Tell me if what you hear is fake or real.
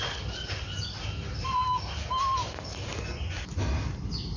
real